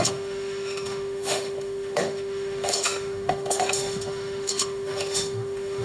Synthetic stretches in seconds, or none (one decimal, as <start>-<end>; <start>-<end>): 0.0-5.8